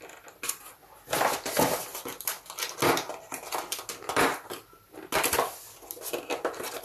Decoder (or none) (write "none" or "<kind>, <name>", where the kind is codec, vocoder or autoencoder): none